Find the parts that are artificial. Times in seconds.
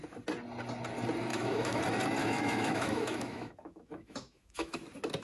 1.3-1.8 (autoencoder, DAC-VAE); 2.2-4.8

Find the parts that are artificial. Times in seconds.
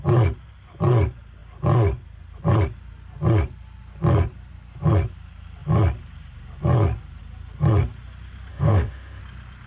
8.5-9.2 (autoencoder, DAC-VAE)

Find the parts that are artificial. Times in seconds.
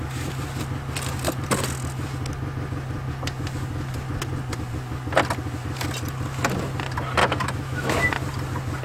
7.2-8.0 (autoencoder, DAC-VAE)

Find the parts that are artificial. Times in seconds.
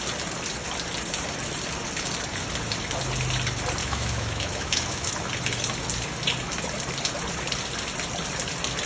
3.8-5.1 (autoencoder, DAC-VAE)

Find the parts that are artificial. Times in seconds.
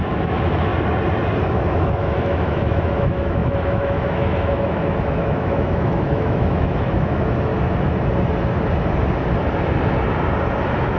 0.0-0.7 (autoencoder, DAC-VAE); 1.4-7.5; 10.6-11.0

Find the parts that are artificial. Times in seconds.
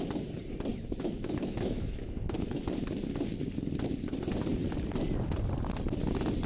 0.7-2.6 (autoencoder, DAC-VAE)